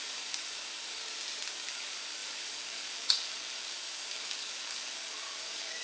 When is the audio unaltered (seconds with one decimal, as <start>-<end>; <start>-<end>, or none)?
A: 1.0-1.5